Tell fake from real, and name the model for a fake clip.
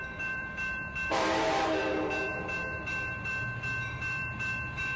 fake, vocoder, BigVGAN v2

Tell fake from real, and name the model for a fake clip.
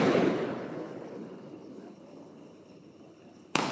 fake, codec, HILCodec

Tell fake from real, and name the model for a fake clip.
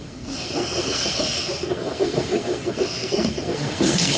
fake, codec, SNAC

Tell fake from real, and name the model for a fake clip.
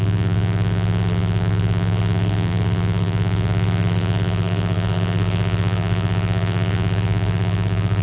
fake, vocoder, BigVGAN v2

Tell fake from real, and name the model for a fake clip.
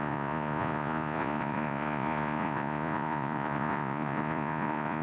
fake, vocoder, Vocos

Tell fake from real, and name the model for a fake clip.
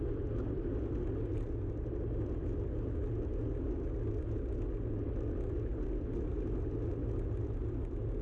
real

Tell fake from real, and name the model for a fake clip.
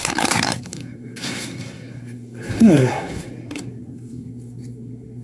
fake, codec, SNAC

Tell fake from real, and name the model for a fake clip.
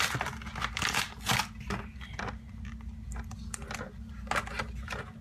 real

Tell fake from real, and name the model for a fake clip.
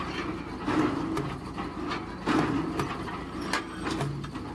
real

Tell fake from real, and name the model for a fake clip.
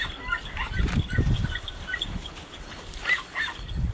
real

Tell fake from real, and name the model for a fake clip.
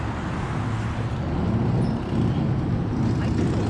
real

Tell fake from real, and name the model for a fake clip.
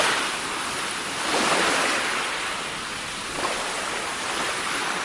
real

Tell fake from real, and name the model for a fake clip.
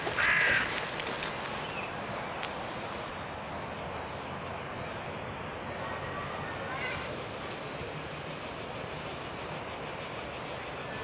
real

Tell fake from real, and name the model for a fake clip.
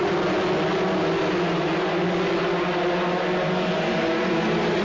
real